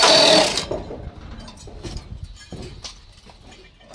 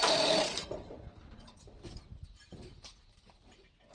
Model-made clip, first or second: second